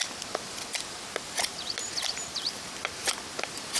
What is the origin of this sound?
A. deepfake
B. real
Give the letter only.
B